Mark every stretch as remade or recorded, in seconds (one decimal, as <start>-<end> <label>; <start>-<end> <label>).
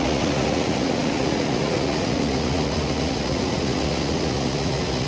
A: 0.0-5.1 remade